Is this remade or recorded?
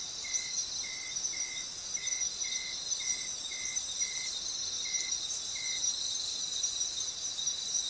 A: recorded